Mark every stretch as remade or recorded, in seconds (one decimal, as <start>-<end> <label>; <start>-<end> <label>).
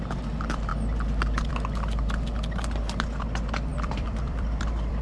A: 0.0-0.7 recorded; 0.7-1.5 remade; 1.5-3.7 recorded; 3.7-5.0 remade